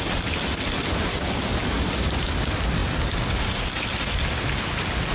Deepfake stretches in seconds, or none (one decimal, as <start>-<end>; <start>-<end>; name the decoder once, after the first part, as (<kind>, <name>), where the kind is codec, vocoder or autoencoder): 1.1-1.8 (codec, DAC)